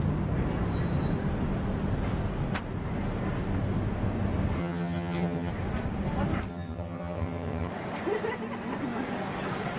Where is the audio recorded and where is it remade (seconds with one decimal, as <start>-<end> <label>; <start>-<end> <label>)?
0.0-4.6 recorded; 4.6-5.5 remade; 5.5-6.5 recorded; 6.5-7.7 remade; 7.7-9.8 recorded